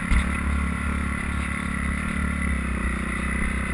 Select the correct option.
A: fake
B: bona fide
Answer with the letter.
B